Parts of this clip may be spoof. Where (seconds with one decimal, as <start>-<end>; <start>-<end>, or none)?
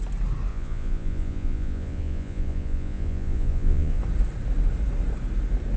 0.5-4.0